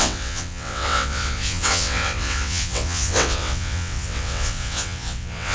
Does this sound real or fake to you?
fake